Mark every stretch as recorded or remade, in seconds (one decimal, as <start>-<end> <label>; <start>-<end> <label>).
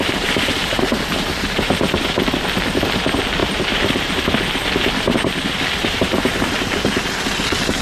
0.0-7.8 recorded